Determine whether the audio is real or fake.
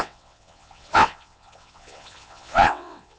fake